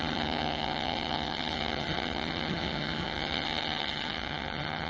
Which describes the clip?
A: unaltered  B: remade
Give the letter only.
B